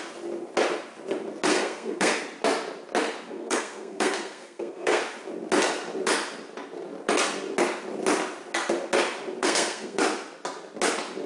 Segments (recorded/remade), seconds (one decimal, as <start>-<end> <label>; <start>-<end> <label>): 0.0-1.5 recorded; 1.5-2.2 remade; 2.2-3.3 recorded; 3.3-5.0 remade; 5.0-9.4 recorded; 9.4-10.0 remade; 10.0-11.3 recorded